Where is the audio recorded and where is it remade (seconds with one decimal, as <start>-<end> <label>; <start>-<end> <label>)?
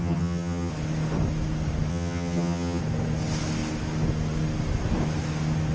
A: 0.0-0.7 remade; 0.7-1.9 recorded; 1.9-2.8 remade; 2.8-5.7 recorded